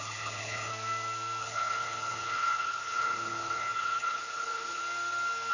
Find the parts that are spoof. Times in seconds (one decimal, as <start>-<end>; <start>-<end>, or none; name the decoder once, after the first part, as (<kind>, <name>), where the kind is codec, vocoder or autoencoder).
0.0-0.7 (codec, HILCodec); 1.4-4.8